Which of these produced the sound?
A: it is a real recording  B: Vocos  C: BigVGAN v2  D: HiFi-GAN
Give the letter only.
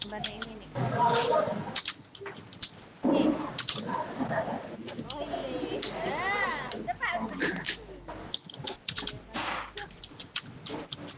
A